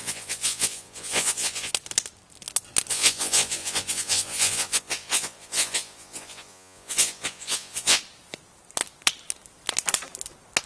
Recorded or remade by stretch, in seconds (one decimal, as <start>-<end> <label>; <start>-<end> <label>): 0.0-1.7 remade; 1.7-2.9 recorded; 2.9-8.0 remade; 8.0-10.7 recorded